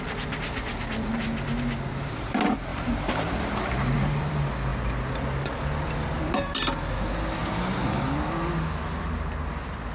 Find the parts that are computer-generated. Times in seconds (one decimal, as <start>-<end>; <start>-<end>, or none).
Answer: 2.7-4.3